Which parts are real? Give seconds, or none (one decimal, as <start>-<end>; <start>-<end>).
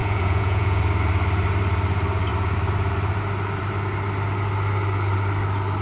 0.8-5.8